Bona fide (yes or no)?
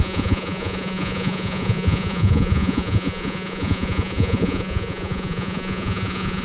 no